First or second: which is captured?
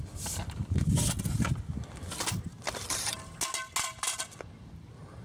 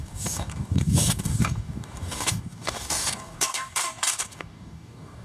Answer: first